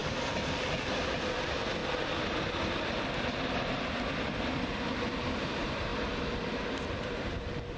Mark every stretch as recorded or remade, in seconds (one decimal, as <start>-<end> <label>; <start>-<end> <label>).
0.0-1.0 recorded; 1.0-1.8 remade; 1.8-4.6 recorded; 4.6-5.9 remade; 5.9-7.0 recorded; 7.0-7.8 remade